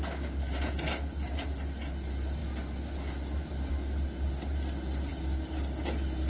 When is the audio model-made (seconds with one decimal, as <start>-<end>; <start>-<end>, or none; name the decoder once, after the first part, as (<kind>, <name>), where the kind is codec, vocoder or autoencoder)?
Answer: none

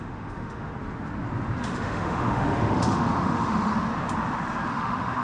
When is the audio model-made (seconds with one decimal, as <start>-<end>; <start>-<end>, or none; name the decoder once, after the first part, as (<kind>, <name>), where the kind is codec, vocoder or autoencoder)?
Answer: 0.0-0.7 (autoencoder, DAC-VAE); 1.6-3.7; 4.7-5.2

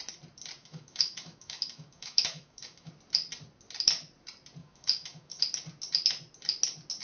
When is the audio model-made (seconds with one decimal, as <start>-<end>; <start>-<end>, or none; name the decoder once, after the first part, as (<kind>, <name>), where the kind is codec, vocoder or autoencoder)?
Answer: 0.6-2.9 (autoencoder, DAC-VAE); 4.6-5.4

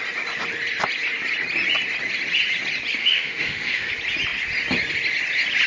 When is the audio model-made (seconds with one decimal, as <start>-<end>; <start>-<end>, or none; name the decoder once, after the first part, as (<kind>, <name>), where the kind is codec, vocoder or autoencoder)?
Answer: 3.0-3.9 (autoencoder, DAC-VAE)

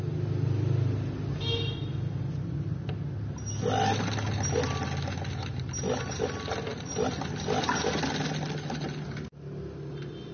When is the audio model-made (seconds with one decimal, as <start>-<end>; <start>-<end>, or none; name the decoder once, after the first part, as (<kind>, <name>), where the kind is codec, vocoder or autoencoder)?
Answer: none

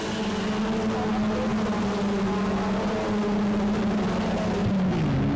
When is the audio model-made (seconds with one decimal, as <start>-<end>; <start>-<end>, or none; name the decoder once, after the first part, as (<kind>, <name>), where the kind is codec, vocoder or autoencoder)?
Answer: none

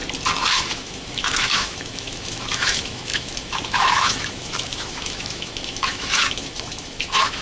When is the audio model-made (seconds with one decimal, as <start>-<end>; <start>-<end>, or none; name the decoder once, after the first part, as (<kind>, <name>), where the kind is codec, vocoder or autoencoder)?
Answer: 0.5-7.4 (autoencoder, DAC-VAE)